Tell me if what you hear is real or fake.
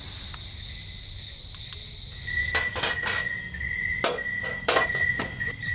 real